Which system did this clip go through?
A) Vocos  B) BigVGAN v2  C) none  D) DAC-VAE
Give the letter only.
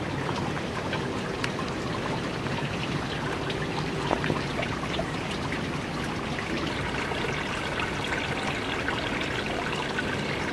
C